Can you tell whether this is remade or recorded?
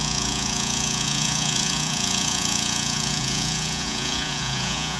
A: remade